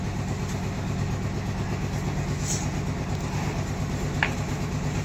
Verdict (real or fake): real